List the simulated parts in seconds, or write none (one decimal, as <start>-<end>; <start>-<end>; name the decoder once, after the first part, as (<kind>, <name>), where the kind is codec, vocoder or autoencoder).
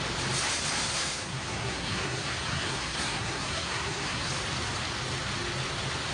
0.8-4.3 (codec, SNAC)